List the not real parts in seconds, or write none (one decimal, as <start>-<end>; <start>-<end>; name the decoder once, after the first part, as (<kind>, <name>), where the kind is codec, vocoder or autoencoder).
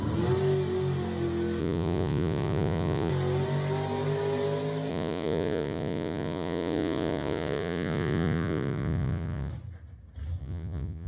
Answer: 1.6-3.1 (vocoder, Vocos); 4.9-9.5; 10.4-11.1